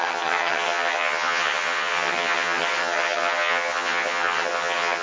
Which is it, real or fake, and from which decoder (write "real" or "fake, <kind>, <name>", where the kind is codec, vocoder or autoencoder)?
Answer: fake, vocoder, HiFi-GAN